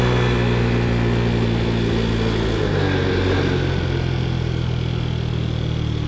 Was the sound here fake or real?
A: real